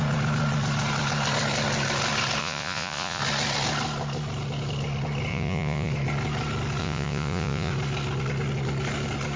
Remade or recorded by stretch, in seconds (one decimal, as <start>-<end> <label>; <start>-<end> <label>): 0.0-2.4 recorded; 2.4-3.2 remade; 3.2-5.3 recorded; 5.3-5.9 remade; 5.9-6.8 recorded; 6.8-7.7 remade; 7.7-9.4 recorded